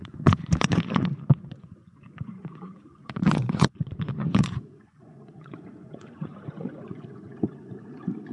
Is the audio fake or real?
fake